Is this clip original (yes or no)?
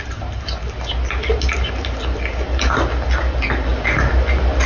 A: yes